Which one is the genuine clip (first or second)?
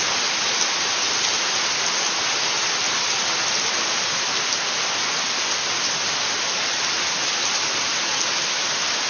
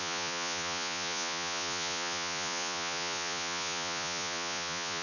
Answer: first